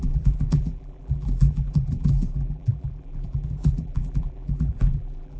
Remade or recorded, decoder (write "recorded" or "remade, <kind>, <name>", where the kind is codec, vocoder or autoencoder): remade, vocoder, BigVGAN v2